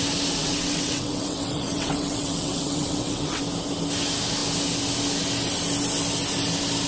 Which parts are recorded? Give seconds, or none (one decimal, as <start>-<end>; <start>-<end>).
0.0-0.4; 3.4-6.9